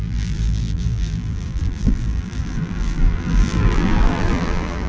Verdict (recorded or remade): remade